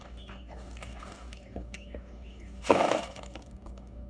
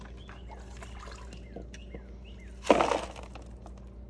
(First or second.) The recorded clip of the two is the second